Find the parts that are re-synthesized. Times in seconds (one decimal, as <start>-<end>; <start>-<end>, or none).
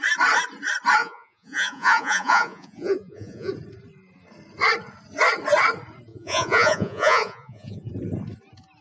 1.0-3.5; 6.1-7.9